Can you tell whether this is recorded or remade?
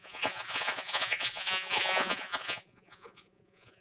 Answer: remade